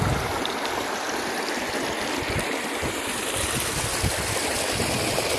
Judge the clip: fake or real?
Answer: real